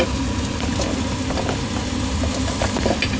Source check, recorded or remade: recorded